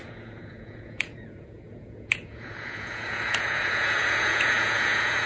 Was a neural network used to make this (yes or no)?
yes